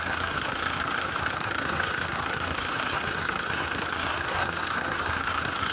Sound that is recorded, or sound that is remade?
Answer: remade